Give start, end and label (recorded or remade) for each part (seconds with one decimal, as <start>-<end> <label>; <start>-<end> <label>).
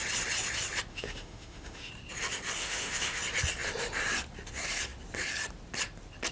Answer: 0.0-0.9 recorded; 0.9-1.9 remade; 1.9-2.6 recorded; 2.6-3.2 remade; 3.2-6.3 recorded